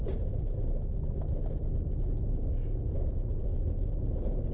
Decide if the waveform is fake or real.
real